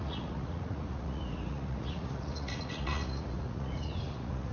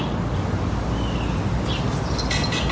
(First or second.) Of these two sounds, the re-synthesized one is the first